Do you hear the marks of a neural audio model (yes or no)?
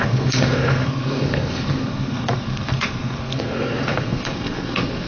yes